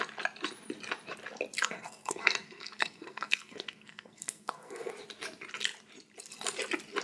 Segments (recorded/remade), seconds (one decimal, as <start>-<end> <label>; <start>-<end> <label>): 0.0-1.6 recorded; 1.6-4.9 remade; 4.9-7.0 recorded